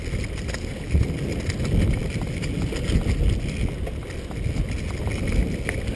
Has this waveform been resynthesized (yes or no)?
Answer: no